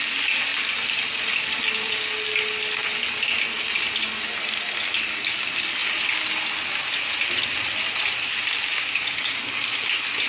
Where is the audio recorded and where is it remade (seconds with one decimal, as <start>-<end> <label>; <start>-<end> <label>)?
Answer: 0.0-10.3 recorded